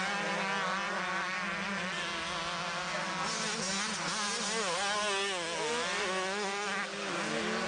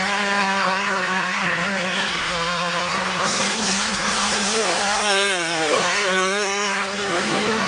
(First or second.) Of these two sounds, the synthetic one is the second